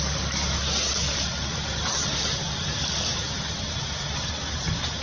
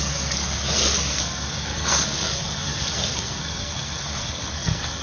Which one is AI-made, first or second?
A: second